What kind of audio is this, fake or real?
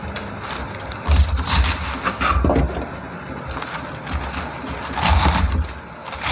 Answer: real